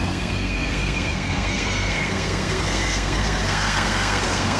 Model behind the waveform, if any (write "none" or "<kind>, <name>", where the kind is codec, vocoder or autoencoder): codec, SNAC